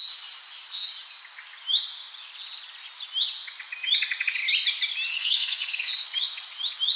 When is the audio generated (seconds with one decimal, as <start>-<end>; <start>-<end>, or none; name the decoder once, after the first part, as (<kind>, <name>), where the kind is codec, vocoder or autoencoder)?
5.1-5.9 (codec, SNAC)